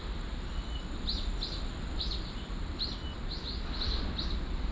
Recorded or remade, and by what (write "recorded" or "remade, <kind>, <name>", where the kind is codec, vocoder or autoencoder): recorded